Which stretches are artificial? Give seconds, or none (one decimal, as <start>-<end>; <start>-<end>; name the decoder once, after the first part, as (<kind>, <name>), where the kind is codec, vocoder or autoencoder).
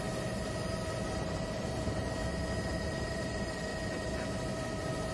0.0-2.2 (vocoder, BigVGAN v2); 2.8-3.7